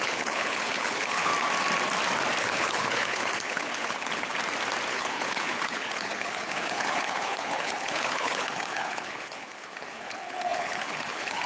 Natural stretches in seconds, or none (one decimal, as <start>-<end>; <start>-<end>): 1.3-2.4; 4.4-4.9